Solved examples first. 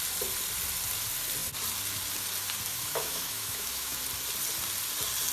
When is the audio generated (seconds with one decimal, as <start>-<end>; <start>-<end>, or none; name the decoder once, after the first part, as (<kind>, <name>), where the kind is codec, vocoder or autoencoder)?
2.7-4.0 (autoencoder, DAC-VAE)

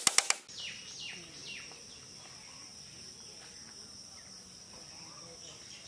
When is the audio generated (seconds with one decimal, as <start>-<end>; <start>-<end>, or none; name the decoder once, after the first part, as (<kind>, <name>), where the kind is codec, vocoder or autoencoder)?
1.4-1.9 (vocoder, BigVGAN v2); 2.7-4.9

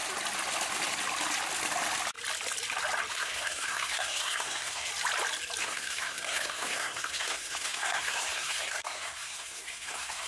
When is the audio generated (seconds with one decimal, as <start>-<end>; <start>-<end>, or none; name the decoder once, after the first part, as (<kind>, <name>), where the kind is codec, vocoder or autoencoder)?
3.1-4.9 (codec, SNAC); 5.6-10.3